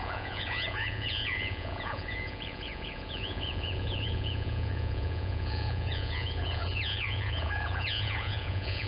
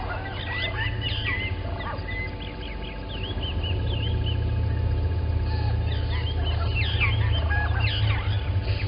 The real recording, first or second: second